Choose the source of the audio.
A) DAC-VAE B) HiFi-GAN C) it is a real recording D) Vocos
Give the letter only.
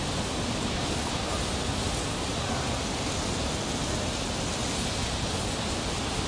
C